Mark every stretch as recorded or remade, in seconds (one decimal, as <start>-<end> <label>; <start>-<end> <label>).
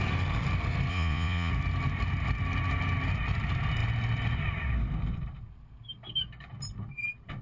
0.0-0.9 recorded; 0.9-1.5 remade; 1.5-7.4 recorded